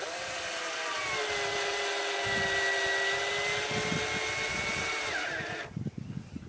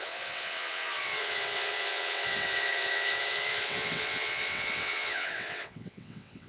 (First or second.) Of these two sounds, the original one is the first